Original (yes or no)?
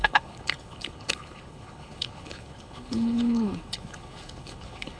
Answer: no